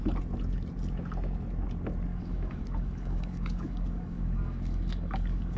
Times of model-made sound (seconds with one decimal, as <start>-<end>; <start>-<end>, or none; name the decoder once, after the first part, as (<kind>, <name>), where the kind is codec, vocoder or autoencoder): 2.1-5.6 (codec, DAC)